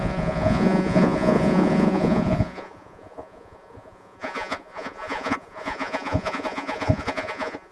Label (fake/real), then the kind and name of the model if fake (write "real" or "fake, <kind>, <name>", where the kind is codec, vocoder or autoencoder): fake, vocoder, Vocos